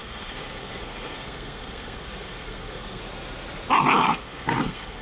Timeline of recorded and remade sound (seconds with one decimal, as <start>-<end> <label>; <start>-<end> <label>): 0.0-3.0 remade; 3.0-4.1 recorded; 4.1-5.0 remade